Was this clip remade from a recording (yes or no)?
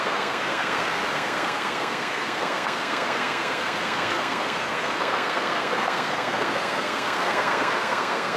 yes